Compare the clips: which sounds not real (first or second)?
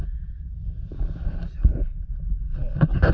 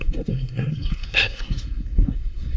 second